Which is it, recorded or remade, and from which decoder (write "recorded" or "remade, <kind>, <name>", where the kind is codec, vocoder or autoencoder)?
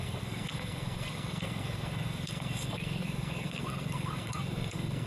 remade, codec, SNAC